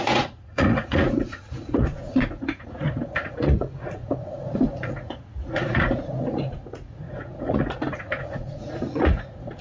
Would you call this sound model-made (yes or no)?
yes